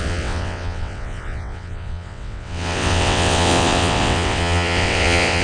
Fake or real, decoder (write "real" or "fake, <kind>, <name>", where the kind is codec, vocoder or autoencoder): fake, vocoder, WaveNeXt